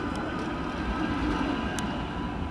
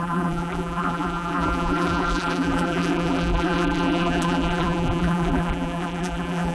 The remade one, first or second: second